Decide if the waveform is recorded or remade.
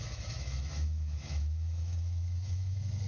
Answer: remade